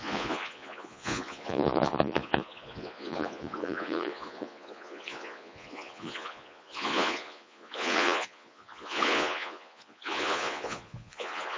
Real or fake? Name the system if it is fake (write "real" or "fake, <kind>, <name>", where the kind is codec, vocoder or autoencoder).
fake, vocoder, Vocos